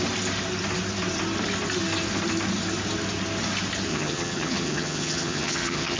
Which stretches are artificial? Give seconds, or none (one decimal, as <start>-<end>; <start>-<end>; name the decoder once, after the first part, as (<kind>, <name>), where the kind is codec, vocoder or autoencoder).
3.9-6.0 (vocoder, HiFi-GAN)